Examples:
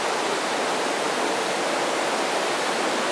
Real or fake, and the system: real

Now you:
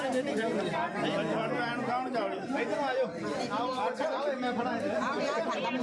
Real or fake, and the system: real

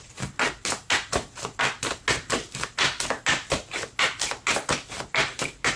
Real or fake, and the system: real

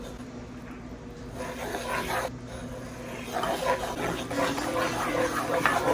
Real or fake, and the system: real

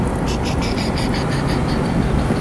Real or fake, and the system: real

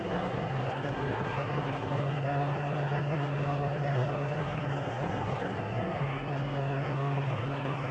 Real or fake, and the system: fake, codec, SNAC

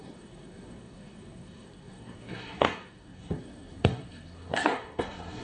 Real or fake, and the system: fake, codec, SNAC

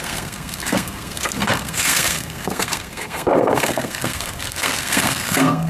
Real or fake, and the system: fake, codec, SNAC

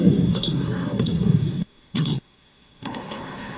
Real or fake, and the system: fake, codec, SNAC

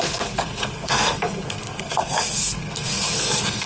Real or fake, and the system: fake, codec, SNAC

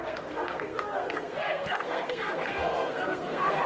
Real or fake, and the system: fake, codec, SNAC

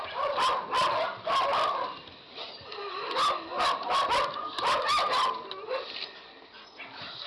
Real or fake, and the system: real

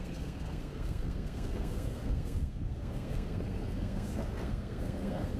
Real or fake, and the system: fake, codec, SNAC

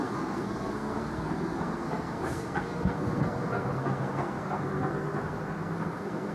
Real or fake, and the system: fake, codec, SNAC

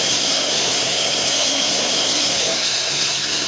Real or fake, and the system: fake, codec, SNAC